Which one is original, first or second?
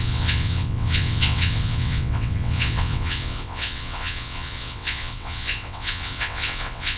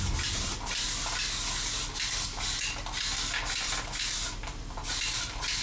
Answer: second